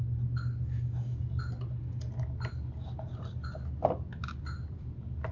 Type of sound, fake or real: real